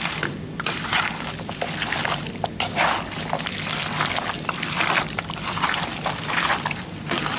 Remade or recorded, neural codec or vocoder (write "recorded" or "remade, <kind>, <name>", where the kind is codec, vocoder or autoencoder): recorded